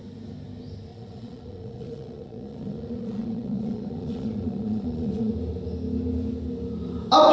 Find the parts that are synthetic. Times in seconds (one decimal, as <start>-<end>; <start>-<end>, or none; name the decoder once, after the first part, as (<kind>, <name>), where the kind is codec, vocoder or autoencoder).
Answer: 0.9-5.3 (vocoder, Vocos)

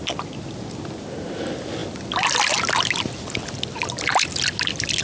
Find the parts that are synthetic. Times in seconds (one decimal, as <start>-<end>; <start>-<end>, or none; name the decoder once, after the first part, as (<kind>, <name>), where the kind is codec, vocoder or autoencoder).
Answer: none

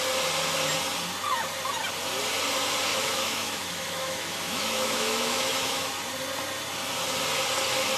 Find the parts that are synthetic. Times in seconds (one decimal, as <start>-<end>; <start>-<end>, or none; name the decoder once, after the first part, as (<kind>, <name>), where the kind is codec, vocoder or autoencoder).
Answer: 2.9-5.9 (autoencoder, DAC-VAE)